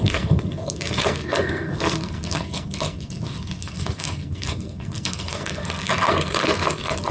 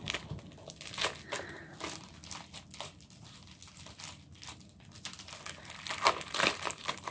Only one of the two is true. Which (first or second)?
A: second